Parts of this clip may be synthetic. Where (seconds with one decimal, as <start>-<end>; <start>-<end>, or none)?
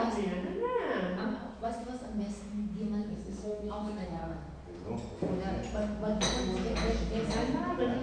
3.0-4.2